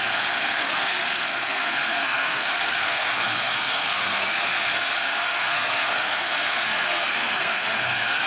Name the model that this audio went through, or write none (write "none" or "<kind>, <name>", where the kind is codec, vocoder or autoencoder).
codec, SNAC